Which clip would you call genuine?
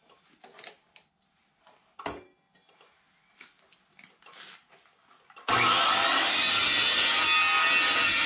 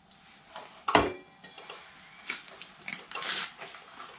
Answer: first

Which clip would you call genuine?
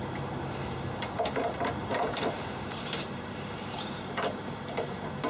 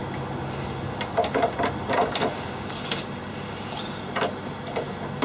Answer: second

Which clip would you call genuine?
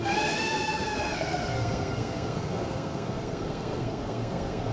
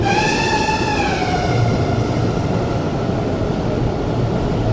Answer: second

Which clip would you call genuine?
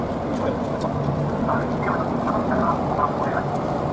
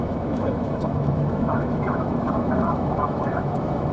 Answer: first